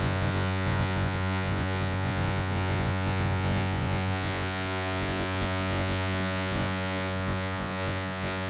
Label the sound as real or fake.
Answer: fake